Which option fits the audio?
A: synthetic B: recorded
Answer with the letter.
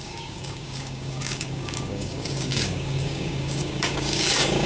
A